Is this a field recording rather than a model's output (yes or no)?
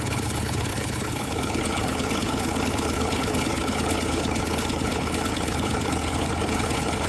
no